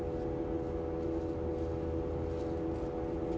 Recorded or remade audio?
recorded